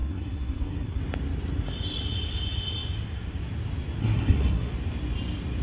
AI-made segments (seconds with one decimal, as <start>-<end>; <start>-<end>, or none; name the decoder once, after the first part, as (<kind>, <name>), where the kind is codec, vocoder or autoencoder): 0.0-1.0 (codec, SNAC); 4.0-4.7